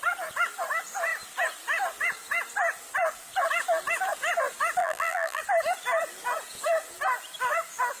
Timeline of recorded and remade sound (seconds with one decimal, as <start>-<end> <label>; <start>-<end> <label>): 0.0-4.8 recorded; 4.8-5.4 remade; 5.4-8.0 recorded